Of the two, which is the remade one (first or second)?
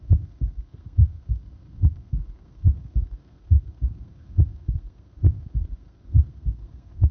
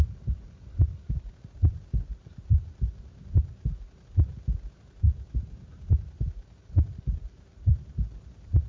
first